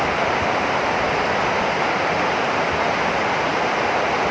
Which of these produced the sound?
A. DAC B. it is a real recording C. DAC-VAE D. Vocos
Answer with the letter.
B